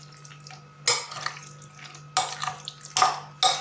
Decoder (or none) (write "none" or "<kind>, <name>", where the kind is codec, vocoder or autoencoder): none